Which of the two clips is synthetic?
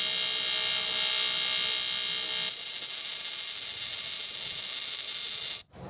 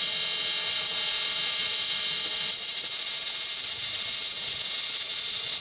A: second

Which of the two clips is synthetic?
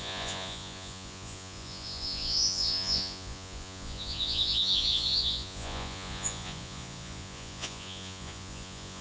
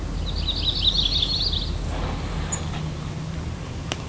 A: first